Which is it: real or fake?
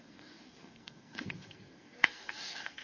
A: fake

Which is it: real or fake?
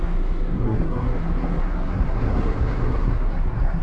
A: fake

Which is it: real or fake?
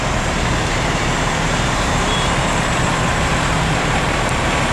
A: fake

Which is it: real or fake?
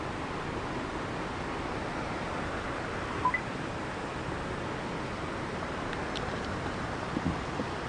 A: real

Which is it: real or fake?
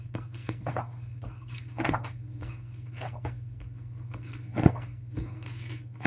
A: fake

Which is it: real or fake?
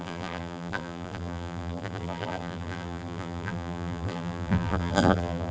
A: fake